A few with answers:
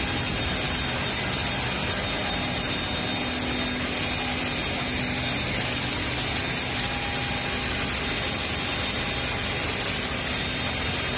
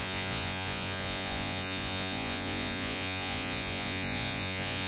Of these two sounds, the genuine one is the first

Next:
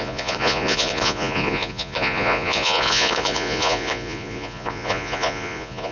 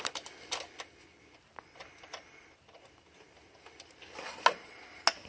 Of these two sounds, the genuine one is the second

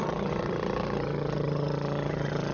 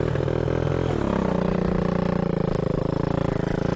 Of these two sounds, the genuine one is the second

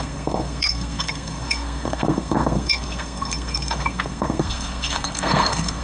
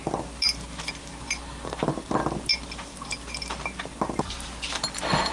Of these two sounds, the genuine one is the second